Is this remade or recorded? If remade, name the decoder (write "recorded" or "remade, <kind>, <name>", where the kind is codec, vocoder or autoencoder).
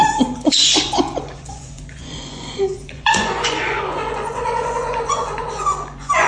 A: remade, vocoder, Vocos